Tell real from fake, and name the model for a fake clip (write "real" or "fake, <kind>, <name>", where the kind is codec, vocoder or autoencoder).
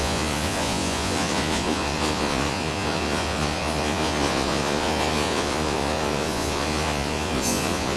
fake, vocoder, Vocos